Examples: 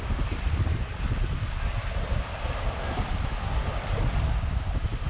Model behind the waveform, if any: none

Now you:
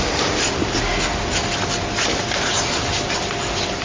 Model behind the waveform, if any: none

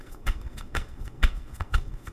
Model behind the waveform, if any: codec, SNAC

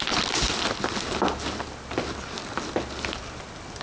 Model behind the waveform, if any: none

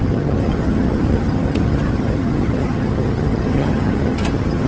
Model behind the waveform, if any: vocoder, HiFi-GAN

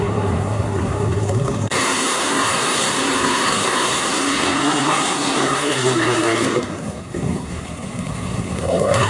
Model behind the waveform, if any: codec, SNAC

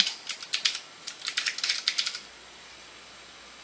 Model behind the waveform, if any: none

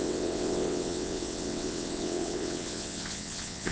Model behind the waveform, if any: vocoder, WaveNeXt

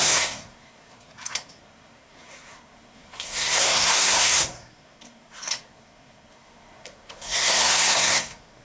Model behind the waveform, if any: codec, SNAC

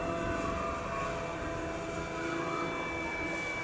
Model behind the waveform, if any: none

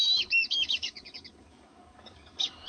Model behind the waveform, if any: codec, DAC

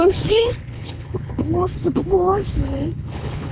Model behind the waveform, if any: codec, HILCodec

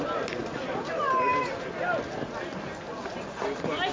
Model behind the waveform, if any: none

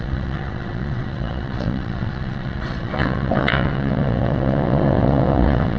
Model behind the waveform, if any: vocoder, WaveNeXt